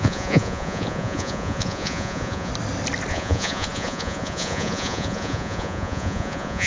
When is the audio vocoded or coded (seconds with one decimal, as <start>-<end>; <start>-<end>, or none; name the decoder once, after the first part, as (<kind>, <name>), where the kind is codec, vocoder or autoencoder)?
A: 0.0-2.5 (vocoder, Vocos); 3.1-6.7